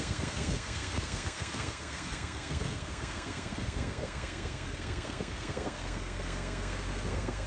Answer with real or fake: fake